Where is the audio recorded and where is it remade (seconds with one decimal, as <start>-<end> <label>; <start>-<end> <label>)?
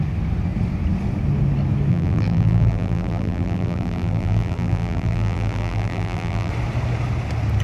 0.0-1.9 recorded; 1.9-6.5 remade; 6.5-7.6 recorded